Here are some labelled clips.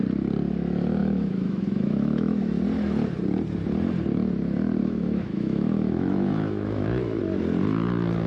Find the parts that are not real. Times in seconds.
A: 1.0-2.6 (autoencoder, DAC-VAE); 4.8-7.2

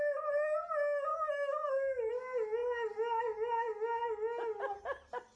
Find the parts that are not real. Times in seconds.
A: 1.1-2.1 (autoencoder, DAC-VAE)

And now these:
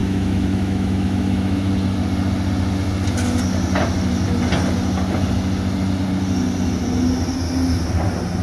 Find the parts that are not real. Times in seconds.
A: 0.0-1.7 (autoencoder, DAC-VAE)

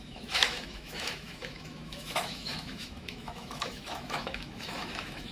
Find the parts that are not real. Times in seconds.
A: 0.0-5.3 (autoencoder, DAC-VAE)